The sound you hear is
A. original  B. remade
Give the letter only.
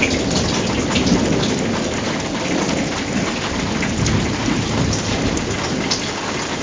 A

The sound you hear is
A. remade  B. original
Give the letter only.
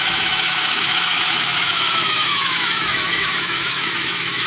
A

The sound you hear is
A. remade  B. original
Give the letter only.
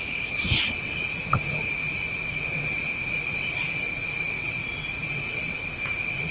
A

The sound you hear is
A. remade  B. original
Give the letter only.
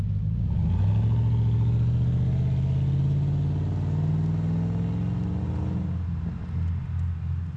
B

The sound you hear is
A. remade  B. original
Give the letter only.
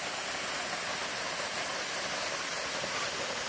B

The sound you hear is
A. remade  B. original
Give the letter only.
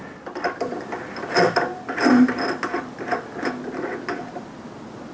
B